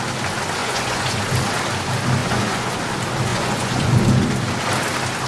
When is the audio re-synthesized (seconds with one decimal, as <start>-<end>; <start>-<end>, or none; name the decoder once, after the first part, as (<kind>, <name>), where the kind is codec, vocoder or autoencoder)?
0.6-1.2 (vocoder, Vocos); 2.2-2.8; 3.3-4.0